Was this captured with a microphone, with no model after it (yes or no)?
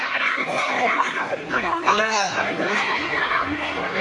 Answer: no